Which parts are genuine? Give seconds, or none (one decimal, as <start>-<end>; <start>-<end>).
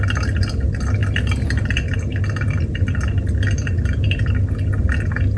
0.0-5.4